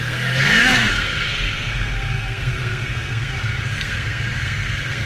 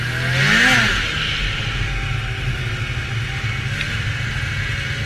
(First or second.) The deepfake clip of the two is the first